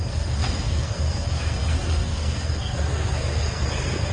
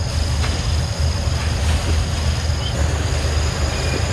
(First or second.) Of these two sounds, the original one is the second